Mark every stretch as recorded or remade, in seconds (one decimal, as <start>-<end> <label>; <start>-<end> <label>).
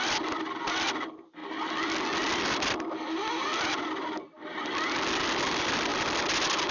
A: 0.0-6.7 recorded